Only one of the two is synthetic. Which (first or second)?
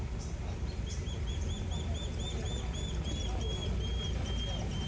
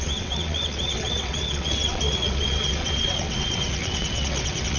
second